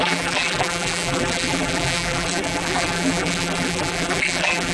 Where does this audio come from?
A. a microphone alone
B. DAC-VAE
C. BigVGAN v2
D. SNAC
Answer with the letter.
C